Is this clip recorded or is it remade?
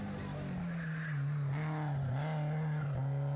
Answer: recorded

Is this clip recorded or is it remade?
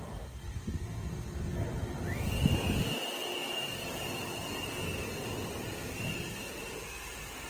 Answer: recorded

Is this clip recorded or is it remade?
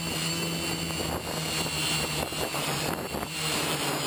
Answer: recorded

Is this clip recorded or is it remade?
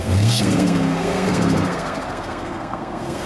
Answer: remade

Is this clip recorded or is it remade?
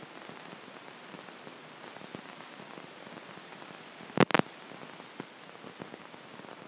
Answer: recorded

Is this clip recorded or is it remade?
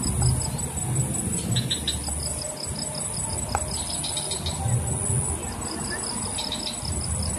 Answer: recorded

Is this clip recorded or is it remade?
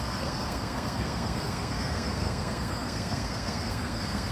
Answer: remade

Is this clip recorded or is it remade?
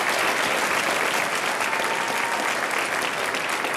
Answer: recorded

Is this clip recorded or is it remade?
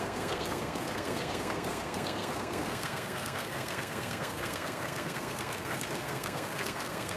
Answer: remade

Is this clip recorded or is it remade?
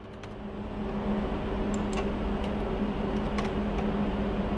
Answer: recorded